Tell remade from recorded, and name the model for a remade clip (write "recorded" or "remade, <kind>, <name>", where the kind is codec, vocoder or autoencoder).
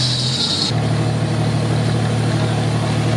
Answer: recorded